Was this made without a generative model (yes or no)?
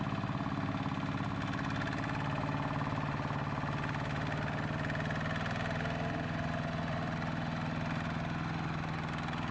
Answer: yes